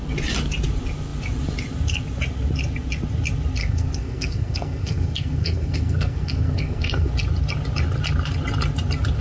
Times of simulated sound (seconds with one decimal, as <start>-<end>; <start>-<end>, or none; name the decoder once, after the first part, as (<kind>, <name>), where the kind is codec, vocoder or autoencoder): 3.6-7.1 (codec, SNAC)